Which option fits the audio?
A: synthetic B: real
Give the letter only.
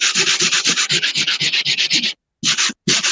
B